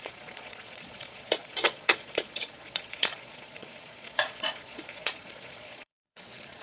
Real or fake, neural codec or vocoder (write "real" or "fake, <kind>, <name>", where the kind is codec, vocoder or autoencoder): fake, vocoder, Vocos